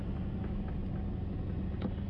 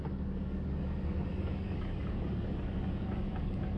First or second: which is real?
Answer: first